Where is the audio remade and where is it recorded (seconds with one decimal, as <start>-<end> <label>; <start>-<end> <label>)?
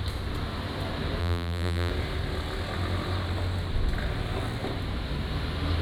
0.0-1.2 recorded; 1.2-1.9 remade; 1.9-5.8 recorded